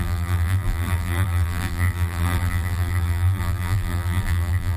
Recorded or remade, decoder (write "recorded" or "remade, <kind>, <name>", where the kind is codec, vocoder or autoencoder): remade, vocoder, BigVGAN v2